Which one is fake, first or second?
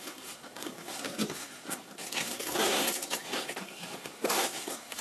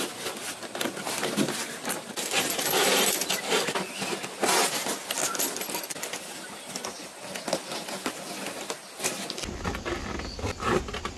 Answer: first